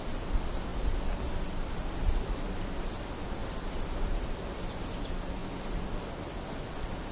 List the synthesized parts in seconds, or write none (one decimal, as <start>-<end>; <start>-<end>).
none